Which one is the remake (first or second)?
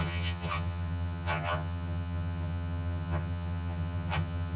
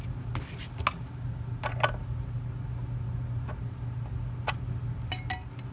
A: first